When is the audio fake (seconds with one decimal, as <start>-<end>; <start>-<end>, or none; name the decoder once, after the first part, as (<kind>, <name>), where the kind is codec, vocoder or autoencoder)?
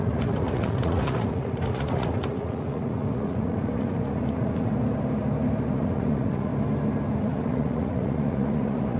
0.0-4.7 (vocoder, Vocos); 5.7-6.5; 7.2-9.0